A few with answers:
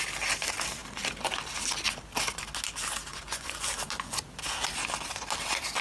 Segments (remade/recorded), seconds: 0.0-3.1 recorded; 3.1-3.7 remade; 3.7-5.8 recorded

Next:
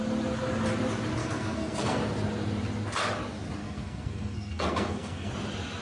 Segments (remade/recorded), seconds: 0.0-1.2 recorded; 1.2-2.0 remade; 2.0-3.6 recorded; 3.6-5.3 remade; 5.3-5.8 recorded

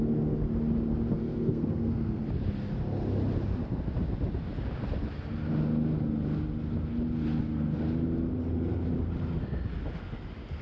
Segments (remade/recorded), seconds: 0.0-1.2 recorded; 1.2-2.2 remade; 2.2-10.6 recorded

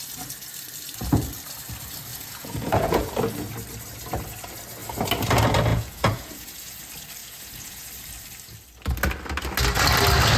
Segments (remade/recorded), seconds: 0.0-2.1 recorded; 2.1-3.1 remade; 3.1-5.7 recorded; 5.7-6.8 remade; 6.8-7.2 recorded; 7.2-7.9 remade; 7.9-10.4 recorded

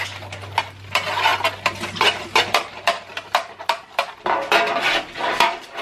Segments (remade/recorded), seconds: 0.0-5.8 recorded